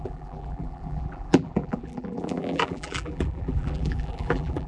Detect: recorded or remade remade